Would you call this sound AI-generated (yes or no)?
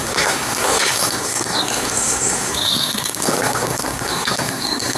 yes